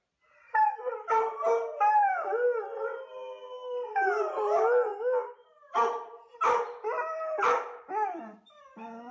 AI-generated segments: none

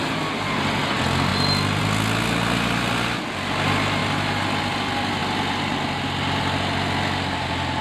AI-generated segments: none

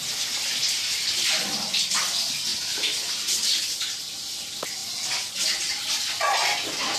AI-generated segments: none

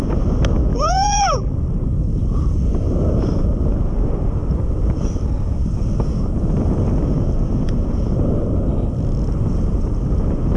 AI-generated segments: 0.7-1.5

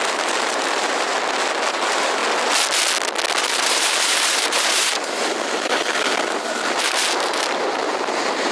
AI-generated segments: 0.0-1.1; 1.7-2.2; 3.4-8.5